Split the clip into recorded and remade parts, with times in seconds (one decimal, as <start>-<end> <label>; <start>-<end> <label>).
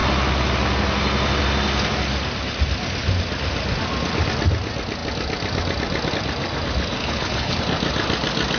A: 0.0-7.0 recorded; 7.0-7.6 remade; 7.6-8.6 recorded